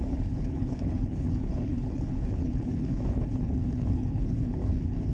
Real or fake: fake